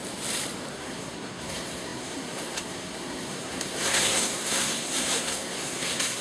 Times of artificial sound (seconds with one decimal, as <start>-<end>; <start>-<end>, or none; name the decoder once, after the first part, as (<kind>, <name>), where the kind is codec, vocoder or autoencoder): 0.7-6.2 (codec, SNAC)